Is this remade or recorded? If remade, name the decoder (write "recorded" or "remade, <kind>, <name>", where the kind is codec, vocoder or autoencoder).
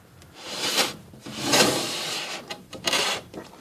remade, vocoder, BigVGAN v2